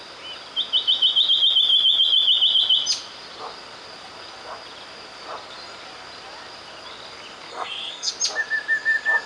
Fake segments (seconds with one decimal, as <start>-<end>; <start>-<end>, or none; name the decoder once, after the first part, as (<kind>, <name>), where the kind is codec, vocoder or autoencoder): 7.5-8.1 (codec, SNAC)